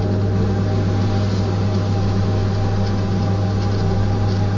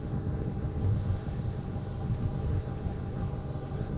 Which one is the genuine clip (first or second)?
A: first